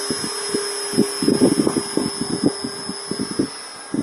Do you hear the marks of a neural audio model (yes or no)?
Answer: no